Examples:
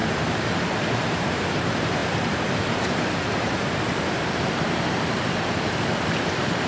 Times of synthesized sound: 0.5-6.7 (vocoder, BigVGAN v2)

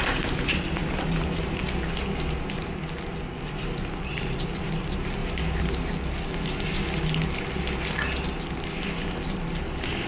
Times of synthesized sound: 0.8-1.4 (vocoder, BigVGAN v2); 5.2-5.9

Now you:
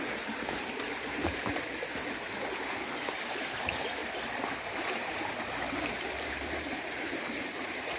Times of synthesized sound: 0.0-4.0 (vocoder, BigVGAN v2); 4.8-8.0

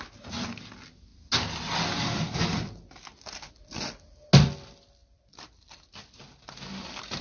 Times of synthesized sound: 5.0-7.2 (vocoder, BigVGAN v2)

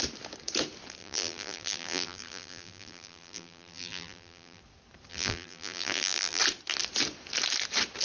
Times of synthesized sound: 1.0-4.6 (vocoder, BigVGAN v2); 5.1-6.4

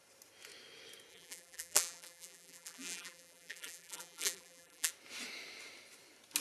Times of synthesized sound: 1.1-4.9 (vocoder, BigVGAN v2)

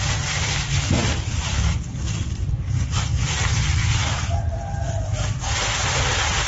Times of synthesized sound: none